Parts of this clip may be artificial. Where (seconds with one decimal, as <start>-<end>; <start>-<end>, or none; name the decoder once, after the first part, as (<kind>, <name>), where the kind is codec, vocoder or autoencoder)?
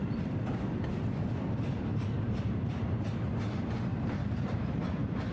1.9-2.5 (vocoder, BigVGAN v2); 3.9-5.3